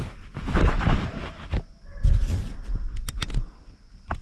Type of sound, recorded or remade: recorded